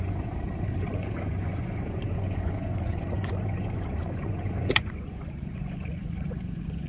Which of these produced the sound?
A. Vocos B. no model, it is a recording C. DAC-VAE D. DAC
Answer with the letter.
A